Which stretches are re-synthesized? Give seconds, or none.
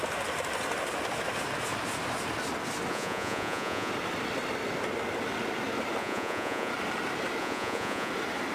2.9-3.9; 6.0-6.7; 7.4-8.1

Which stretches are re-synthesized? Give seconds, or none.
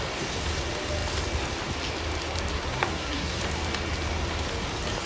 2.5-3.4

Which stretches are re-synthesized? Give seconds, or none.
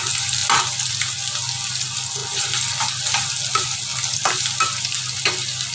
none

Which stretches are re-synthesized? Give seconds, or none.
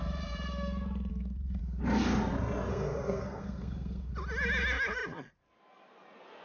1.1-1.6; 2.7-4.1